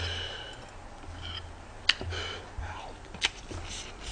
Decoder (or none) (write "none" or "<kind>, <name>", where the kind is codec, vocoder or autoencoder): none